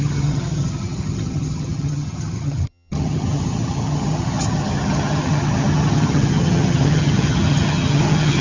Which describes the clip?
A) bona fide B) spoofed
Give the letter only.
B